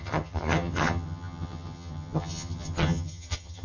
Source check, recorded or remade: remade